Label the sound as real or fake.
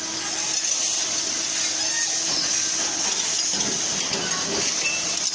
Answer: real